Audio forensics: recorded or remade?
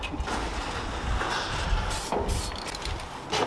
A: recorded